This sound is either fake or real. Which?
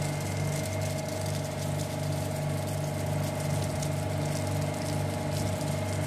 real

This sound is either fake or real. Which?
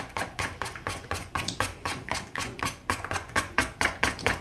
fake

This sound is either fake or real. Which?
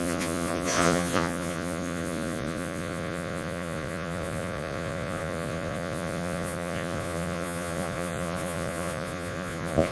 fake